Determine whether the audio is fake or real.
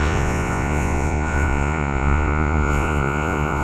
fake